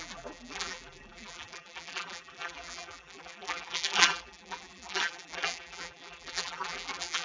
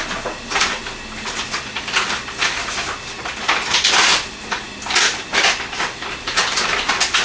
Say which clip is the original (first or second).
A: second